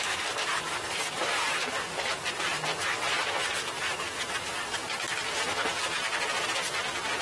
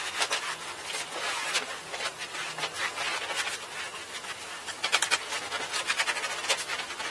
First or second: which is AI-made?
first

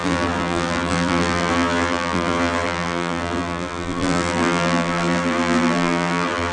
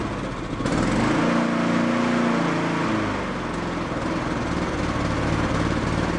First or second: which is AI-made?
first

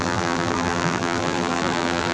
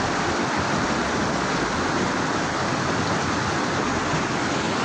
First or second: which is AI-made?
first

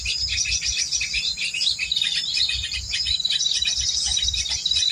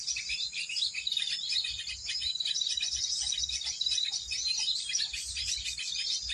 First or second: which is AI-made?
first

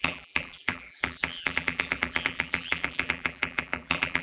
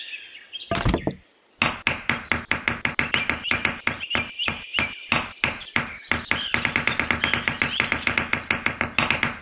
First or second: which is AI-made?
first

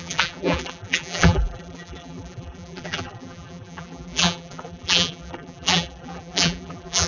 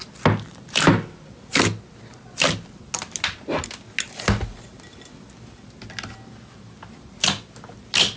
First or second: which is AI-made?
first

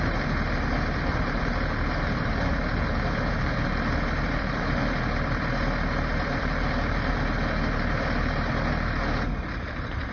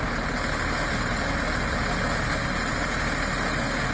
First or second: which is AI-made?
first